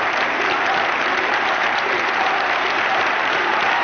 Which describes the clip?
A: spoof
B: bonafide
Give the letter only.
A